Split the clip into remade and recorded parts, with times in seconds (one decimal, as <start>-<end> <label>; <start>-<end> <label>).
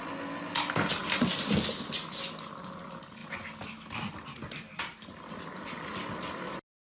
0.0-6.9 recorded